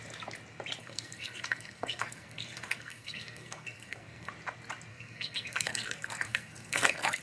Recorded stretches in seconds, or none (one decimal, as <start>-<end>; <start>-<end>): 0.0-0.8; 4.3-4.9